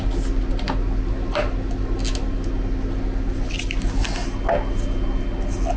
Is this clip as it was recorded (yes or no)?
yes